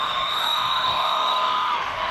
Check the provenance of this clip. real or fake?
fake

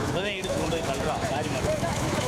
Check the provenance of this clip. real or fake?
fake